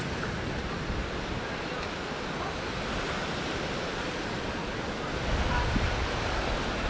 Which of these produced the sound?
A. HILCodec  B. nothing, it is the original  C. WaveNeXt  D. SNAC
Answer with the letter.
B